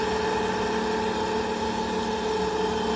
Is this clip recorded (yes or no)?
yes